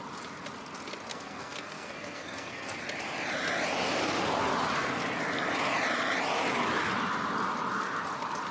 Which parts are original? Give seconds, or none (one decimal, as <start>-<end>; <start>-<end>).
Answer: 0.0-1.1; 2.8-8.5